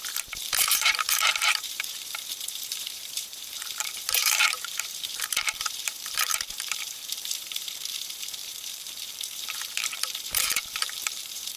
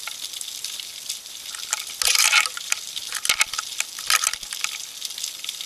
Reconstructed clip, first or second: first